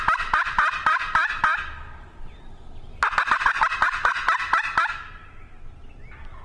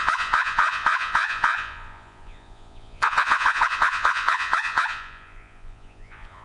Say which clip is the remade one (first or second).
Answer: second